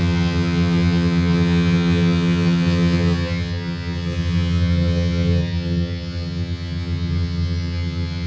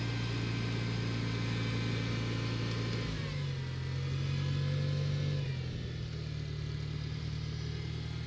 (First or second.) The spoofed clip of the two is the first